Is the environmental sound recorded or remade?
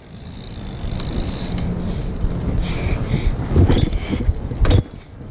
recorded